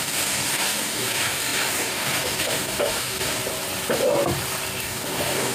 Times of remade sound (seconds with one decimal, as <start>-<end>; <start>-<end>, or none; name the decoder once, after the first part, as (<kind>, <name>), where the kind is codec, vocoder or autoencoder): 0.0-3.4 (codec, DAC); 4.8-5.5